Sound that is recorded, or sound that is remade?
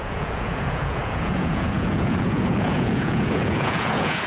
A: remade